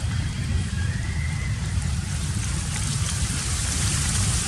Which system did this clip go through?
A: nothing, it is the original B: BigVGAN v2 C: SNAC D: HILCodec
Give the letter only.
B